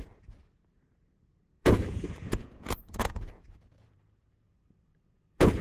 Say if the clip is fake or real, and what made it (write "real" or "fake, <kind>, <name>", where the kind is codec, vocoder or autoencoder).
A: fake, vocoder, Vocos